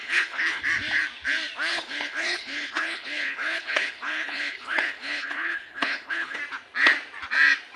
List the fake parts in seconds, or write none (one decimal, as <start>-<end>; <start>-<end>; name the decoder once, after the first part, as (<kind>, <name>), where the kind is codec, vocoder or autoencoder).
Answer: 0.0-0.6 (codec, HILCodec); 1.7-6.4